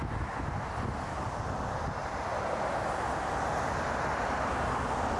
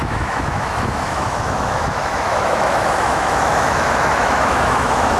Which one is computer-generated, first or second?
second